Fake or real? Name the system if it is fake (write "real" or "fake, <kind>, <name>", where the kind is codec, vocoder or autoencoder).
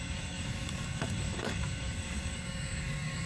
fake, codec, DAC